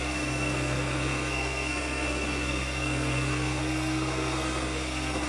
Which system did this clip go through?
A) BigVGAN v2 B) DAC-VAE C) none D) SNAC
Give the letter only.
D